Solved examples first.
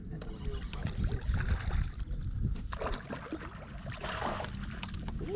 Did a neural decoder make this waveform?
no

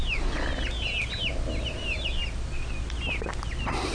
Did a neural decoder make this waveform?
no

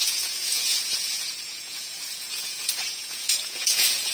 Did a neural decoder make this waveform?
yes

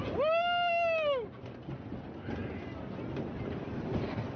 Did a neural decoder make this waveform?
no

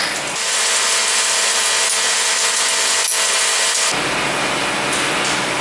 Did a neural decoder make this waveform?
no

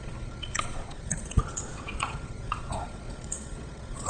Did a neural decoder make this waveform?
yes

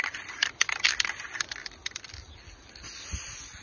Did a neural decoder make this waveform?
no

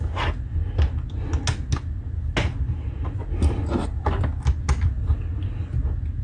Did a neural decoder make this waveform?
no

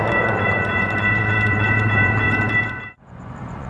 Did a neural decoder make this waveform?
yes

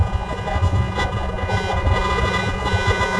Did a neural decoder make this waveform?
yes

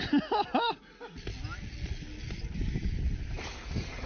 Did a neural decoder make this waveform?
no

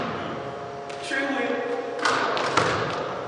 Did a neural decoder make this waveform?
no